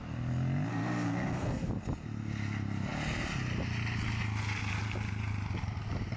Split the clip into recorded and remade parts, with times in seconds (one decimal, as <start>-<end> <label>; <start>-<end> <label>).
0.0-0.7 recorded; 0.7-1.7 remade; 1.7-6.2 recorded

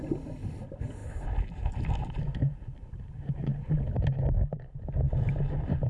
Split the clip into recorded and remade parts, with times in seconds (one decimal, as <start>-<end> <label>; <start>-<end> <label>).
0.0-5.9 recorded

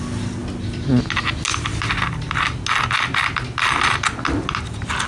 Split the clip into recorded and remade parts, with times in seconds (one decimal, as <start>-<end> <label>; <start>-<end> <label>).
0.0-5.1 recorded

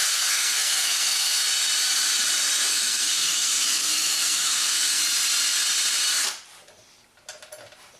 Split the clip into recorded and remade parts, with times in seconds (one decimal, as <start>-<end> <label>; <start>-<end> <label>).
0.0-1.4 remade; 1.4-2.7 recorded; 2.7-5.0 remade; 5.0-8.0 recorded

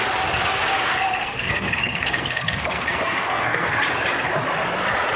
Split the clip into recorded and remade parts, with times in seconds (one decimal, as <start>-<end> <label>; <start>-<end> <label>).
0.0-1.2 recorded; 1.2-3.7 remade; 3.7-5.2 recorded